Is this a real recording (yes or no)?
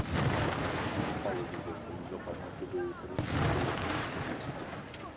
yes